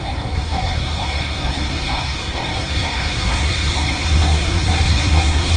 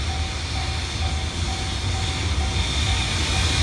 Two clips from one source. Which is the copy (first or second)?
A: first